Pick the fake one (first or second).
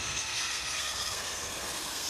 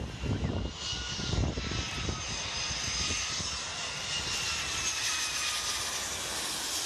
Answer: first